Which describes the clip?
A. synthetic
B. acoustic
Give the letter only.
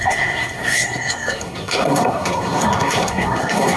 A